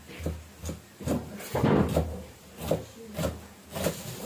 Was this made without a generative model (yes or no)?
yes